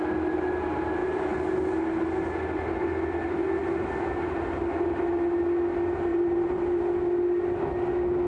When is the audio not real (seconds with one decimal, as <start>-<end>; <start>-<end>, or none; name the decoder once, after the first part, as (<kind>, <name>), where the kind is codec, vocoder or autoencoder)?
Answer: 6.1-6.8 (vocoder, BigVGAN v2)